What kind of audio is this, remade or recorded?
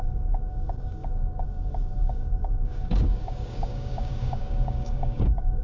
remade